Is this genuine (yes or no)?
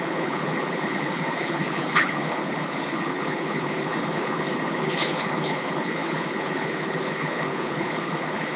no